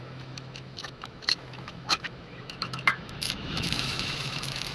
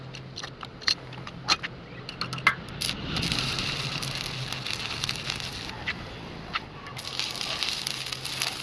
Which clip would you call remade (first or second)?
first